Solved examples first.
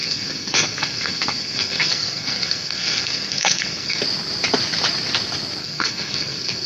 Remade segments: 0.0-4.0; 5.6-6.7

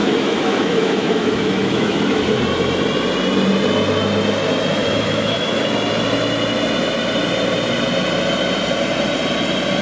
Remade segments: 0.0-2.4; 4.8-5.6

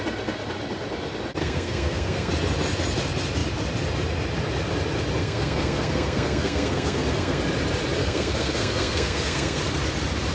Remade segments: 1.4-2.3; 5.2-7.4; 8.0-9.6

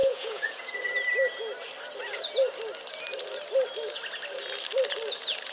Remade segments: 0.0-0.7

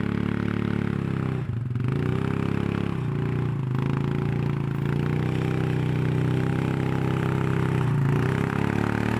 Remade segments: 6.5-8.5

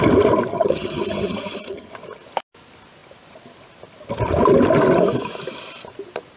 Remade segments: 0.5-1.9